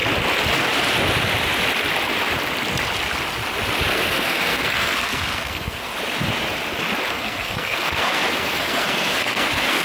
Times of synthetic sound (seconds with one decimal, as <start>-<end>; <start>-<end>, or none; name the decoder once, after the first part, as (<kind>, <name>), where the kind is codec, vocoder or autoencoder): 3.9-5.9 (codec, SNAC); 7.1-9.8

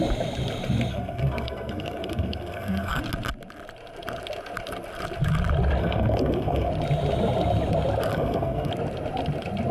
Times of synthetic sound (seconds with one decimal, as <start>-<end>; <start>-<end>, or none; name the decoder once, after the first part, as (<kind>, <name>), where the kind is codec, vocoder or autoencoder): 0.9-3.0 (codec, SNAC); 5.8-6.7; 8.1-8.7

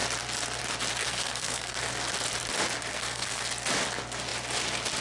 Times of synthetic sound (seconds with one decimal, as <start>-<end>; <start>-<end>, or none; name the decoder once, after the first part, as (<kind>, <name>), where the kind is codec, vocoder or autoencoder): 1.0-1.8 (codec, SNAC); 2.9-3.4

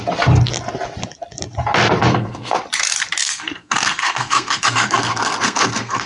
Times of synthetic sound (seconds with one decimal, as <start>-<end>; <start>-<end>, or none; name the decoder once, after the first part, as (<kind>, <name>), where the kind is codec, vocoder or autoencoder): 2.1-2.6 (codec, SNAC); 3.2-6.1

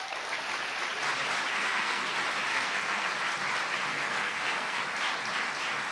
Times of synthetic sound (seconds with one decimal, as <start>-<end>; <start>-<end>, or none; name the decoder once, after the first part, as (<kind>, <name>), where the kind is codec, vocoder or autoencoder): 1.5-2.1 (codec, SNAC); 2.5-3.1; 3.9-4.8

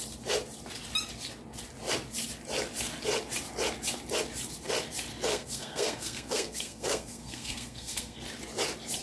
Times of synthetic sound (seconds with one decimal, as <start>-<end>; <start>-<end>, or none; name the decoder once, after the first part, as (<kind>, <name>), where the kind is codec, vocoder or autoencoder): 5.3-8.2 (codec, SNAC)